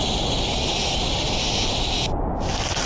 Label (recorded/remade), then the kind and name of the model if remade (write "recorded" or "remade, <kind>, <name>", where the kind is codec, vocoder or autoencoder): recorded